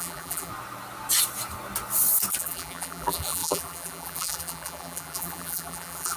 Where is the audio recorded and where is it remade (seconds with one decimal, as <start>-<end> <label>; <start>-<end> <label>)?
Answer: 0.0-0.5 remade; 0.5-2.4 recorded; 2.4-6.2 remade